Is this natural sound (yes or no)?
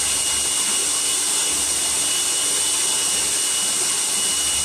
yes